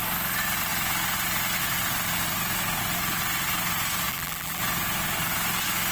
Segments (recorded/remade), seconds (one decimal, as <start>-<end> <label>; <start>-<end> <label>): 0.0-4.1 recorded; 4.1-4.6 remade; 4.6-5.9 recorded